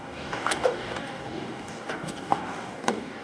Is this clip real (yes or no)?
no